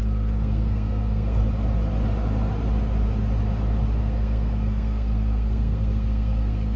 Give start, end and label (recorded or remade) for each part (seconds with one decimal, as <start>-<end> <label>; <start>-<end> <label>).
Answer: 0.0-1.4 remade; 1.4-4.0 recorded; 4.0-6.8 remade